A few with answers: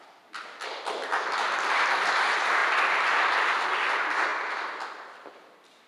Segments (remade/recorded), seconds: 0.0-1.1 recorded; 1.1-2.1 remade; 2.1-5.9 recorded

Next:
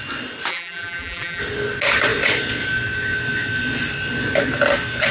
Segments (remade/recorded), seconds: 0.0-0.5 recorded; 0.5-1.4 remade; 1.4-5.1 recorded